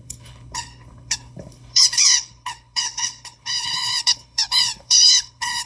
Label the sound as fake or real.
fake